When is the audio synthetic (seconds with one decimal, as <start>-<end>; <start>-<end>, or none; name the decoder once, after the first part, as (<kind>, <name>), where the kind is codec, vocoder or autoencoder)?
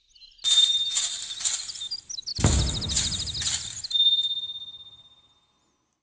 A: none